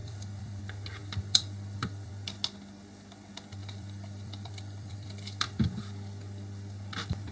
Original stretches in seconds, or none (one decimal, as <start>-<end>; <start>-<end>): 0.6-1.0; 2.1-3.6; 5.8-7.3